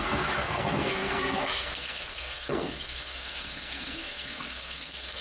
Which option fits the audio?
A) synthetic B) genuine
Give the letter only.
A